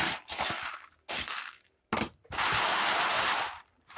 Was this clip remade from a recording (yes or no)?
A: no